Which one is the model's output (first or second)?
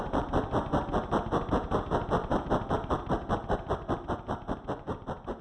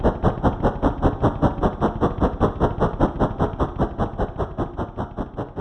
first